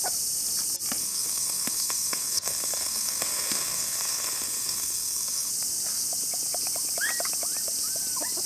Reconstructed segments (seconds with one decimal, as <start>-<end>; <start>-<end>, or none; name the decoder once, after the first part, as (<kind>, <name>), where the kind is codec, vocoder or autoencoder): 1.0-5.5 (codec, SNAC)